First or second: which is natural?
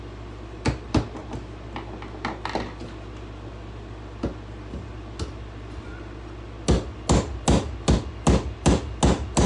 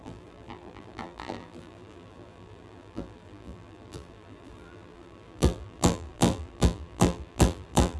first